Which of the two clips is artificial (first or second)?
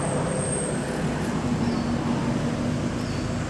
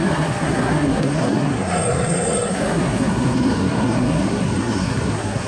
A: second